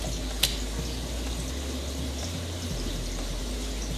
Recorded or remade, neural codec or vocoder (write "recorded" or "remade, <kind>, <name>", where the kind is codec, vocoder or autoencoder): recorded